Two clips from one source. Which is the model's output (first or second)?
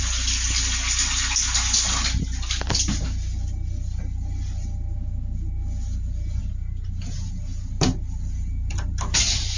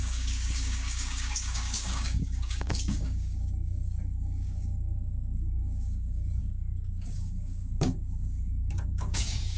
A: second